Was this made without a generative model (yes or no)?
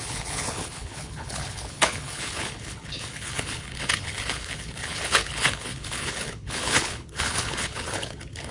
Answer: no